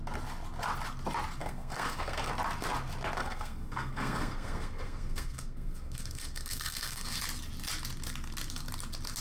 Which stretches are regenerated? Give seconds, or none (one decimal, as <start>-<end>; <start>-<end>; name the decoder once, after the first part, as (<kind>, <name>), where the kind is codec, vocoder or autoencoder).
1.4-2.3 (codec, SNAC); 3.2-7.2